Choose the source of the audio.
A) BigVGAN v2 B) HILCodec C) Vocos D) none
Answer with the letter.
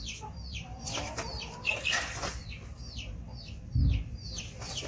A